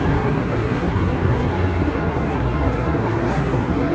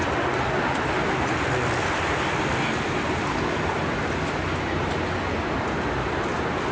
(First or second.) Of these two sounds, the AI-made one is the first